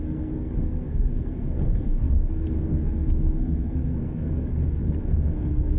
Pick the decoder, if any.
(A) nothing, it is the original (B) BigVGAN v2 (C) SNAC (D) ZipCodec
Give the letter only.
C